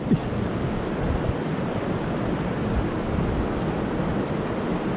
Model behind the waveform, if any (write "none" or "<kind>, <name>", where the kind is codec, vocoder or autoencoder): none